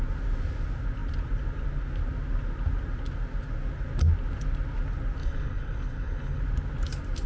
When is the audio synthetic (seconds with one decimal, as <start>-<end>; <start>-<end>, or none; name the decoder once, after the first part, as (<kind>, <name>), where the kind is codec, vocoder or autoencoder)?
5.2-6.4 (codec, HILCodec)